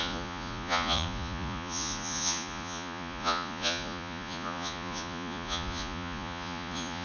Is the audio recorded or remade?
remade